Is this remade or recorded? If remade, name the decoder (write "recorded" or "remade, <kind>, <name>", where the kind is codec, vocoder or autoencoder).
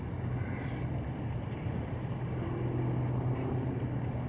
recorded